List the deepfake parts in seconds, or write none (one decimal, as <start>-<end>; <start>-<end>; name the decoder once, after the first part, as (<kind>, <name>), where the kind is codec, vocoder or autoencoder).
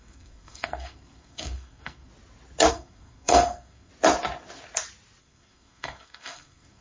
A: 0.0-2.1 (codec, SNAC); 2.7-3.9; 5.2-6.8